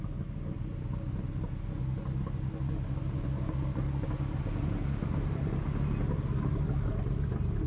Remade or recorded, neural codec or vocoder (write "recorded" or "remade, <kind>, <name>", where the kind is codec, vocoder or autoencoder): recorded